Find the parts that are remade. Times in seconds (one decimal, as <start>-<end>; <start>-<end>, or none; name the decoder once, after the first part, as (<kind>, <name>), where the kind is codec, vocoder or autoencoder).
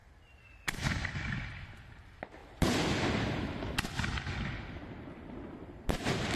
none